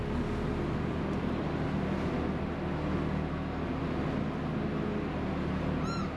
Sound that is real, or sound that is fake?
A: real